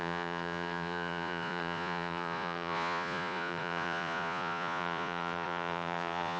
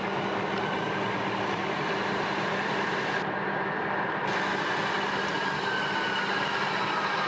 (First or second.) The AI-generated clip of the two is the first